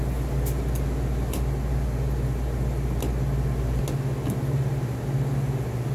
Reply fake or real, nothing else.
real